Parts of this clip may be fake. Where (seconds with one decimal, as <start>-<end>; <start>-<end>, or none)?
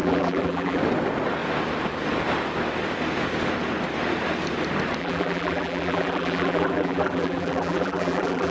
0.0-0.8; 5.0-8.5